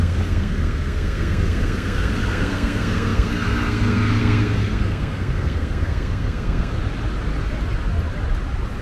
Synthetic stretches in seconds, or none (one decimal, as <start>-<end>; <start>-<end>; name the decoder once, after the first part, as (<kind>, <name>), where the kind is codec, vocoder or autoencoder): 0.0-6.8 (codec, SNAC)